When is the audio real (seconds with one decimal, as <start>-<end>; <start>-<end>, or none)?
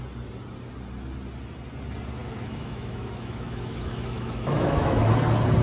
0.0-2.2; 5.1-5.6